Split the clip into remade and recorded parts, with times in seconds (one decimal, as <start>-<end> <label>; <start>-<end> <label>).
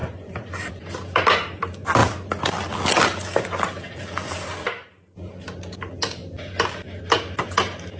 0.0-8.0 recorded